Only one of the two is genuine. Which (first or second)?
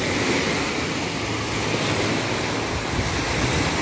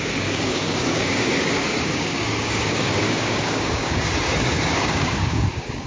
first